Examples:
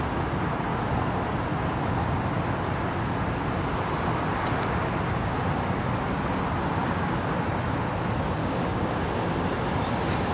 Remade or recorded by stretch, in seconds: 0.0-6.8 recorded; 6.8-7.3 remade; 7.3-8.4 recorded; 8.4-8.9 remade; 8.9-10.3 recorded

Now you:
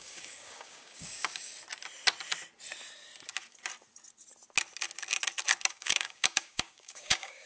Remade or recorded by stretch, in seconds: 0.0-1.5 remade; 1.5-5.7 recorded; 5.7-7.5 remade

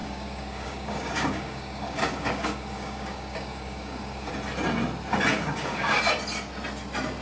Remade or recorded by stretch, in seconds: 0.0-4.3 remade; 4.3-5.3 recorded; 5.3-6.0 remade; 6.0-7.2 recorded

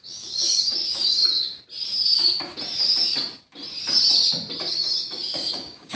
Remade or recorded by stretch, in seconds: 0.0-1.2 remade; 1.2-4.7 recorded; 4.7-5.9 remade

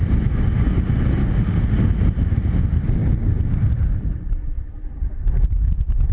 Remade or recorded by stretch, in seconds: 0.0-1.2 recorded; 1.2-1.7 remade; 1.7-6.1 recorded

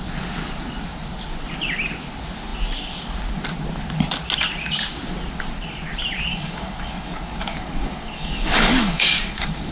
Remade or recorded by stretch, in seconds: 0.0-6.3 recorded; 6.3-9.7 remade

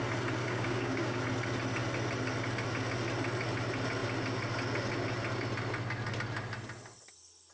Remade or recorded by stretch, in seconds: 0.0-0.4 recorded; 0.4-1.2 remade; 1.2-7.5 recorded

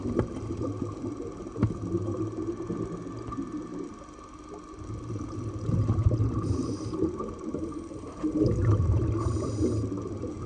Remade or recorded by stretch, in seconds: 0.0-10.5 recorded